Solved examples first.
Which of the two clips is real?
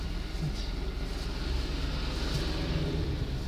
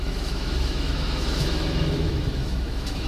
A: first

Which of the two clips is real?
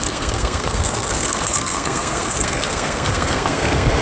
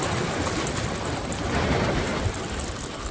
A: second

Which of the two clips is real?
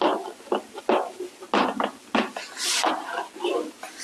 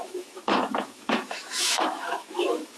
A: first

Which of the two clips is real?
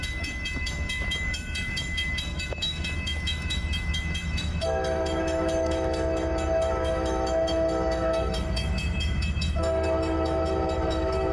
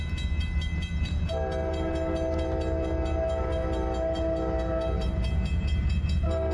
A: second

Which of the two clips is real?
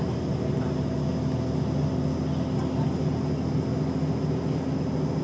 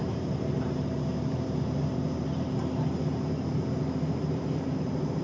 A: first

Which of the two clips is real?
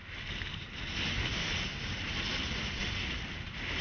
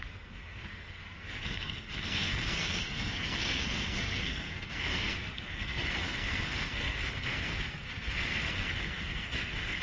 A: first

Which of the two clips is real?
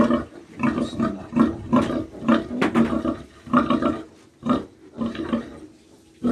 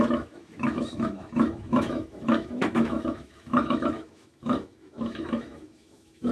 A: first